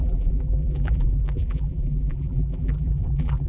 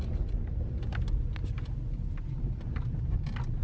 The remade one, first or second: first